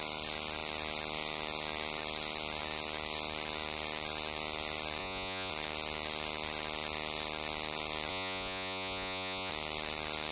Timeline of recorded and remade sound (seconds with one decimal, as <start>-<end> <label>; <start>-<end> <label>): 0.0-5.0 recorded; 5.0-5.5 remade; 5.5-8.1 recorded; 8.1-9.5 remade; 9.5-10.3 recorded